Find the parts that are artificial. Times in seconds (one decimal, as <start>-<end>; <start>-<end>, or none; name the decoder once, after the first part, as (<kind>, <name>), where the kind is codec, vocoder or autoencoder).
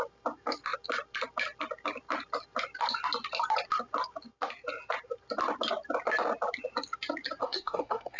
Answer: 7.4-8.2 (codec, SNAC)